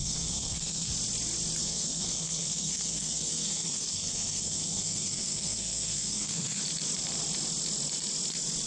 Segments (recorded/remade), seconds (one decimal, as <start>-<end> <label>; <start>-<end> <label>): 0.0-0.9 remade; 0.9-1.6 recorded; 1.6-6.6 remade; 6.6-8.7 recorded